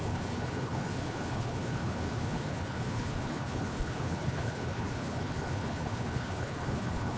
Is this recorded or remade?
remade